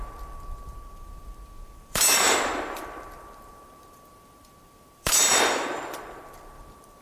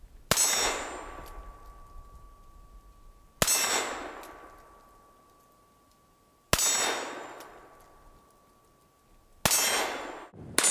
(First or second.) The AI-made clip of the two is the first